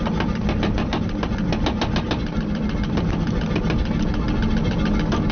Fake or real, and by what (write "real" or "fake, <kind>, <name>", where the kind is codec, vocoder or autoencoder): real